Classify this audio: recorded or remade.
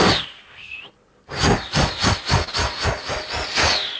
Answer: recorded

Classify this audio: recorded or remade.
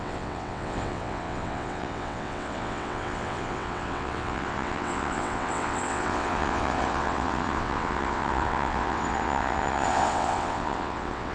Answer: remade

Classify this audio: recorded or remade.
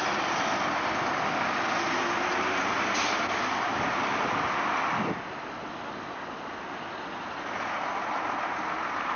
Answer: recorded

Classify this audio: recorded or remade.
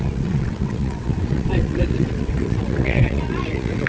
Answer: remade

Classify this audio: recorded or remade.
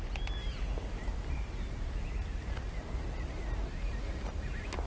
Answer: recorded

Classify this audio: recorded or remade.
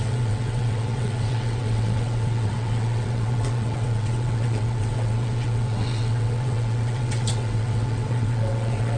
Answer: remade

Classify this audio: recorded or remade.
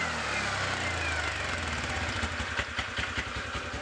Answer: recorded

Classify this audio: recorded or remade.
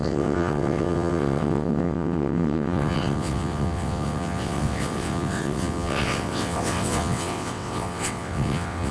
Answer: remade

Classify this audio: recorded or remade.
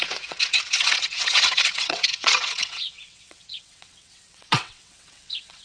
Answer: remade